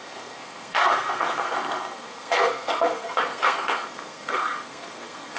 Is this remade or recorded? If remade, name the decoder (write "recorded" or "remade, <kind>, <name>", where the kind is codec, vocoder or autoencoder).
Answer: remade, codec, SNAC